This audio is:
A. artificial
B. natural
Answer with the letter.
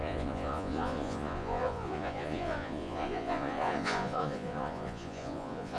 A